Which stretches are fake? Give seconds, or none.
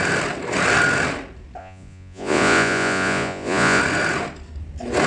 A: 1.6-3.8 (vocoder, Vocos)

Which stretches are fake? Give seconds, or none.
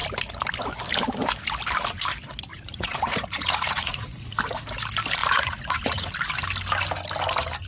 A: 2.5-4.3 (vocoder, Vocos); 5.2-6.1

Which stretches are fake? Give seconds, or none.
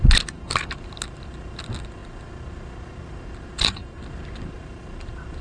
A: none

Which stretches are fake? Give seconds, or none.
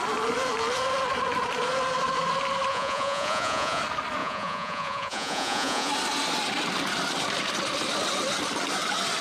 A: 2.7-3.8 (vocoder, Vocos); 4.2-5.9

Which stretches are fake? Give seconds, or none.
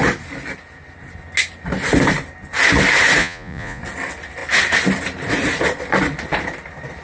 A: 3.2-3.8 (vocoder, Vocos)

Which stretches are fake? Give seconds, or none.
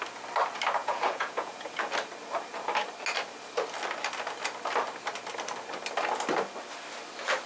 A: 0.8-1.9 (vocoder, Vocos)